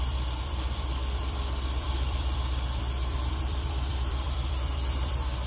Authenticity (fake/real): fake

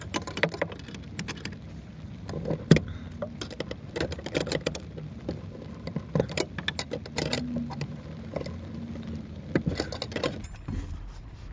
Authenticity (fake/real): real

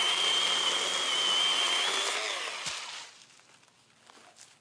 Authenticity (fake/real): real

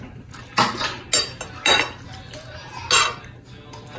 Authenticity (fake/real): real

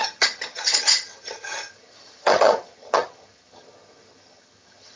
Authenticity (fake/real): fake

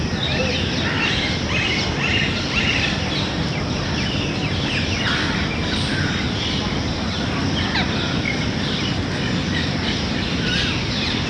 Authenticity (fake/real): real